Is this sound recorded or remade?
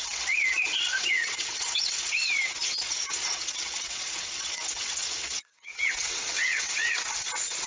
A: remade